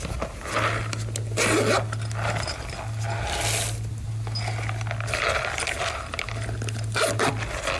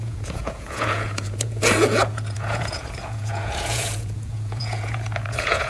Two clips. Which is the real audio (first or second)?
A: first